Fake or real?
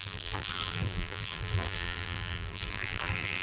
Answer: fake